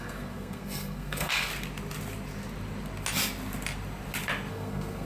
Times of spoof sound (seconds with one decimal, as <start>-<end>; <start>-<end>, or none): 0.0-1.5; 4.5-5.1